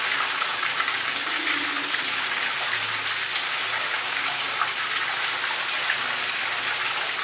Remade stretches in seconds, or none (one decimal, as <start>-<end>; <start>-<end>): 0.5-1.6; 3.9-4.6